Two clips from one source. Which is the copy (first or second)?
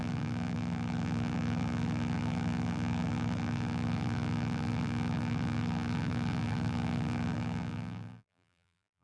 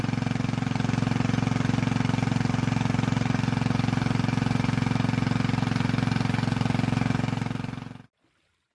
first